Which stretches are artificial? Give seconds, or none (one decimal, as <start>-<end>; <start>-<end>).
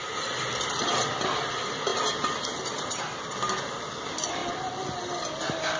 none